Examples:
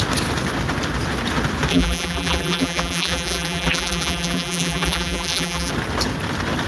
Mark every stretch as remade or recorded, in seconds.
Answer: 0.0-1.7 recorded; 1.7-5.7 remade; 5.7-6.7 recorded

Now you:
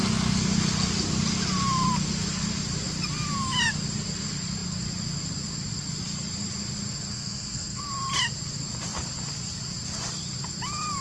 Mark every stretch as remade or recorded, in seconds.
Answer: 0.0-7.1 recorded; 7.1-7.8 remade; 7.8-11.0 recorded

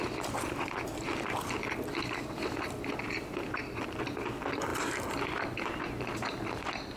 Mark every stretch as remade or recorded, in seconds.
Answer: 0.0-7.0 remade

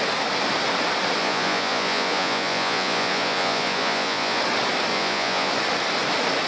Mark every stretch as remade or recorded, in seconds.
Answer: 0.0-1.2 recorded; 1.2-4.4 remade; 4.4-4.9 recorded; 4.9-5.5 remade; 5.5-6.5 recorded

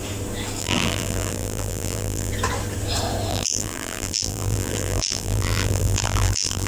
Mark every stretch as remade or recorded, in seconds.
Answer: 0.0-0.6 recorded; 0.6-2.3 remade; 2.3-3.3 recorded; 3.3-6.7 remade